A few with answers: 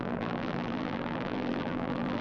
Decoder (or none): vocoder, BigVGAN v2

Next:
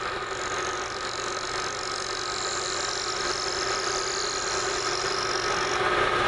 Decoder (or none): none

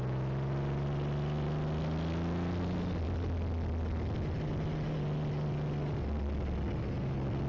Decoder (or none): none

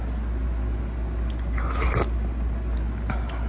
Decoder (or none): none